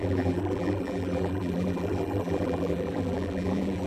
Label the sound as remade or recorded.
remade